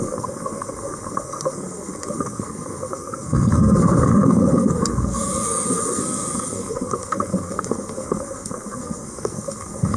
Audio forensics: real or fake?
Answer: fake